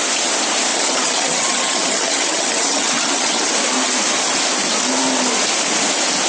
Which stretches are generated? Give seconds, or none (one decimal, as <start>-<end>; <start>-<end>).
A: 0.7-3.5